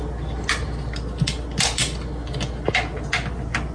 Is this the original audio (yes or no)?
yes